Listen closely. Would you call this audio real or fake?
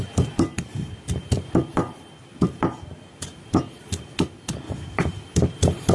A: real